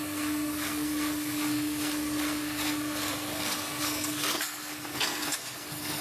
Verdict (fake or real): fake